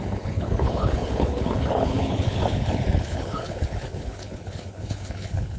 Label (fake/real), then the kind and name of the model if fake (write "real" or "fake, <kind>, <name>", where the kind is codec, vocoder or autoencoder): fake, codec, HILCodec